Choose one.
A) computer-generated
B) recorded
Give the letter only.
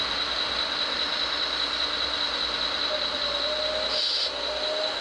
B